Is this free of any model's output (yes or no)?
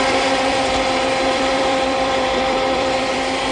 no